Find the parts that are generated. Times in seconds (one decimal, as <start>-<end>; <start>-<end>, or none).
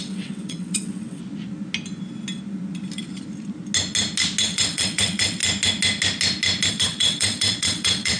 0.0-1.2; 4.4-5.4; 6.7-8.2